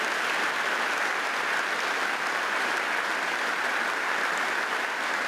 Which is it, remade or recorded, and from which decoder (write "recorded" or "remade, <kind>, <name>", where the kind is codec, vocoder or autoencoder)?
recorded